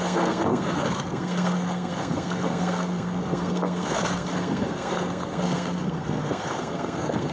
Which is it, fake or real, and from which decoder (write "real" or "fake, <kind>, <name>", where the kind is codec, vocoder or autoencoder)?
fake, codec, SNAC